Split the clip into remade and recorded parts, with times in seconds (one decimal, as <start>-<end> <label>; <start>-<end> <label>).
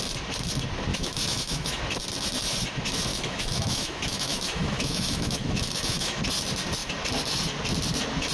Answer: 0.0-0.9 recorded; 0.9-1.8 remade; 1.8-3.1 recorded; 3.1-6.2 remade; 6.2-8.3 recorded